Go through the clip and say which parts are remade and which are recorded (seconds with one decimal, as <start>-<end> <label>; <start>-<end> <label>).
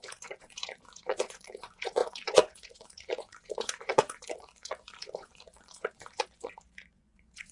0.0-7.5 remade